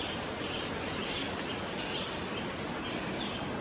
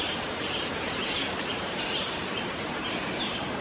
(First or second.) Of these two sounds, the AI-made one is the second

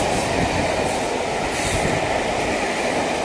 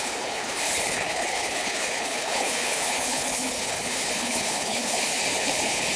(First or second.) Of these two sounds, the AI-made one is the second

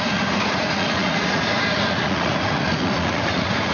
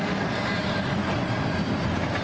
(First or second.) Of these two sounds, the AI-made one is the first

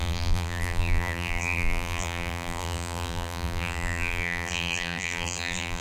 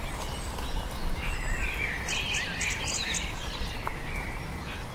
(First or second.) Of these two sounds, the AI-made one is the first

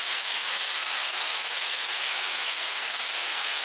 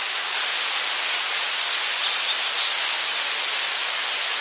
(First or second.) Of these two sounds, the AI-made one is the first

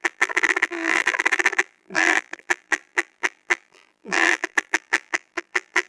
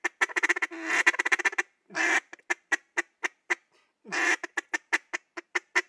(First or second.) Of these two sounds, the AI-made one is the first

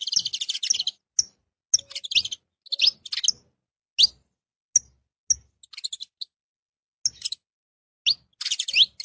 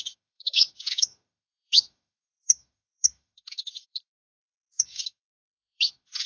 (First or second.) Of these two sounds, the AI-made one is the second